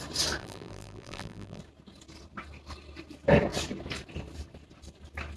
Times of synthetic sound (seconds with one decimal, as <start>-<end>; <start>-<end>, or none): 0.4-1.6